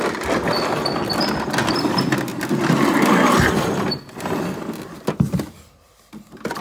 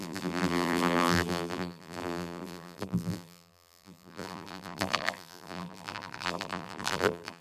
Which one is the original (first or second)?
first